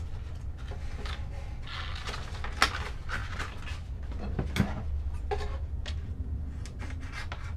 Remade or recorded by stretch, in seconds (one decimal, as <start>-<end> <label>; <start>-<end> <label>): 0.0-7.6 recorded